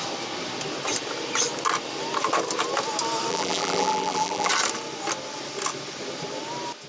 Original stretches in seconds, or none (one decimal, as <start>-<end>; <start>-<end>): 0.0-3.3; 4.5-6.9